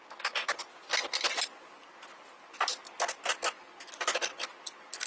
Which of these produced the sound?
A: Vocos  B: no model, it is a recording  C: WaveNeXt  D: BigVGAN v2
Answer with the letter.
B